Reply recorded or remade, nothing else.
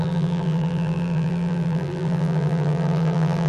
remade